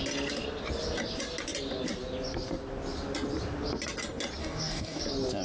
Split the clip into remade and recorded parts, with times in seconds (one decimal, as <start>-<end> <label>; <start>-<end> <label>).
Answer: 0.0-4.4 recorded; 4.4-5.0 remade; 5.0-5.4 recorded